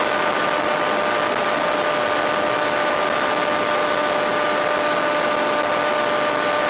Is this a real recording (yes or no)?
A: yes